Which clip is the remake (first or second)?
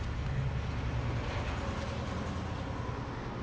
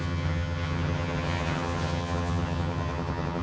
second